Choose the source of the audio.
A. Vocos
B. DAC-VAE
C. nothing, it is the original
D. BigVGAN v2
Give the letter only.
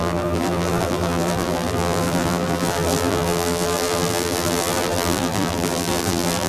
D